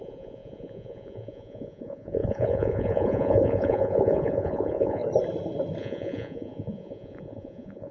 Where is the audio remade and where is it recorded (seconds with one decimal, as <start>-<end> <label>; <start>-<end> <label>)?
0.0-5.0 remade; 5.0-5.8 recorded; 5.8-7.9 remade